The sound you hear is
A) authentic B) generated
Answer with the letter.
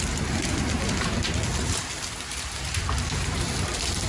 A